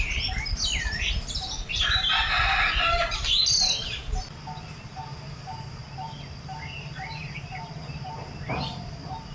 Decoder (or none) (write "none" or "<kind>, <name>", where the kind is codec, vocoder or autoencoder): none